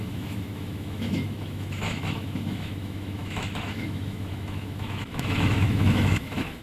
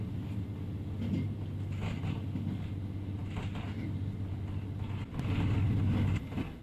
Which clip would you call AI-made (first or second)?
first